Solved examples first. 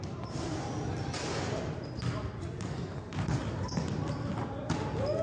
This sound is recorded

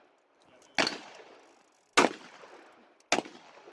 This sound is recorded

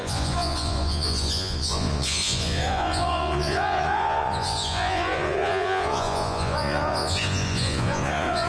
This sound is remade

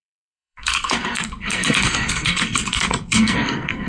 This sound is remade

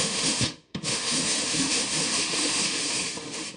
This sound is remade